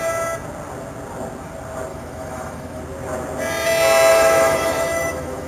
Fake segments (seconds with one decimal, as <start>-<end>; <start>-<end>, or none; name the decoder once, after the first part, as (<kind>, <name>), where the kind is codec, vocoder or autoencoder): 1.9-2.8 (autoencoder, DAC-VAE); 4.1-5.5